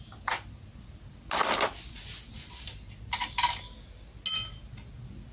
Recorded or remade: recorded